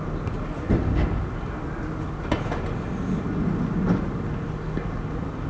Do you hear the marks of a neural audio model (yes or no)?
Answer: no